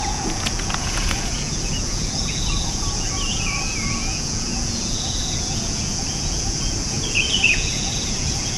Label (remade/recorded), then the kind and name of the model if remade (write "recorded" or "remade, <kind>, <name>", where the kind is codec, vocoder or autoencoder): remade, vocoder, Vocos